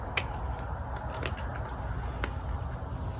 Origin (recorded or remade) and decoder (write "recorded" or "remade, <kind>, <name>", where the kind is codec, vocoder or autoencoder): recorded